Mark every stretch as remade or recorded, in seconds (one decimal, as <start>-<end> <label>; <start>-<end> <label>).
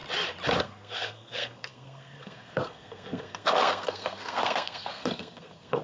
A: 0.0-0.6 recorded; 0.6-5.8 remade